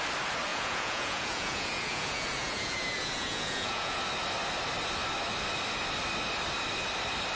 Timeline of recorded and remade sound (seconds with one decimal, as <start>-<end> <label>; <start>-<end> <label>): 0.0-0.5 recorded; 0.5-4.0 remade; 4.0-7.4 recorded